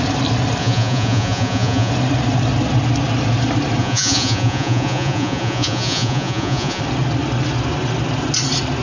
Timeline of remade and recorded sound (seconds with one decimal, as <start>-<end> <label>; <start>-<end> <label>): 0.0-0.6 recorded; 0.6-1.9 remade; 1.9-3.8 recorded; 3.8-6.8 remade; 6.8-8.8 recorded